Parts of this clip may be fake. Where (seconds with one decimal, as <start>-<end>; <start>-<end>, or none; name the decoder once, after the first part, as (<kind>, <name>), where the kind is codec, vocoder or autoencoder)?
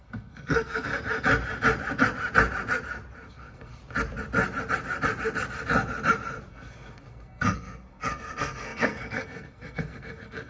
0.0-0.9 (codec, SNAC); 3.3-3.8; 6.5-10.5